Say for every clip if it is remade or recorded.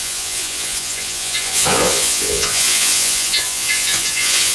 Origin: remade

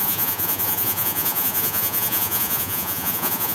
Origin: remade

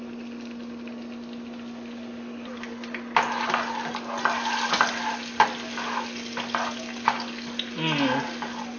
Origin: recorded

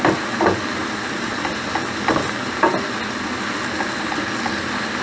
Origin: recorded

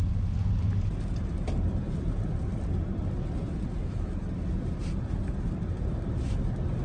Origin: recorded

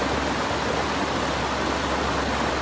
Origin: recorded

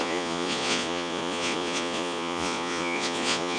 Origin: remade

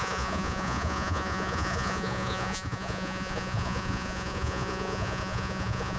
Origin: remade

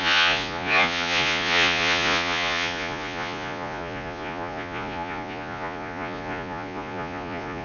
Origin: remade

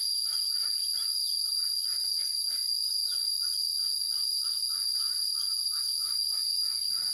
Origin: recorded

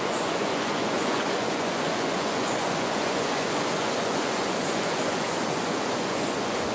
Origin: remade